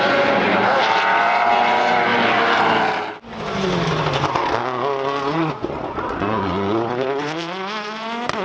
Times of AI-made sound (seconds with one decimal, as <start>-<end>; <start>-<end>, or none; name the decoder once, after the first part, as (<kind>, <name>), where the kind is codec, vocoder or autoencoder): 0.0-0.5 (vocoder, Vocos); 1.2-2.1; 5.5-8.4